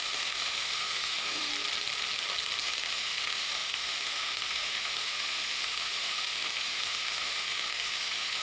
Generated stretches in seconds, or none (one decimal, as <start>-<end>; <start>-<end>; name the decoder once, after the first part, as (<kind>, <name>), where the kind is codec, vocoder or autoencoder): 0.0-1.5 (autoencoder, DAC-VAE); 2.6-8.4

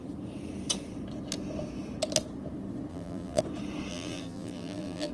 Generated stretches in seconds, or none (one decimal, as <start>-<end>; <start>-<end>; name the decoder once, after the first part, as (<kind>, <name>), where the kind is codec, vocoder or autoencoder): 2.9-3.4 (vocoder, BigVGAN v2); 3.9-5.1